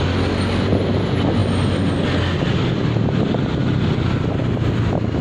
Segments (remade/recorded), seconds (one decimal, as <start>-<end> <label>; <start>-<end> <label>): 0.0-5.2 recorded